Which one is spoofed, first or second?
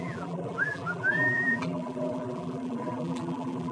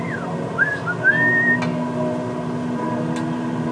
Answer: first